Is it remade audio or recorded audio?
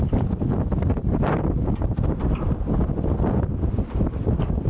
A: recorded